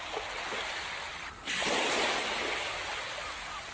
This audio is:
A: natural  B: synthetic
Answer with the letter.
A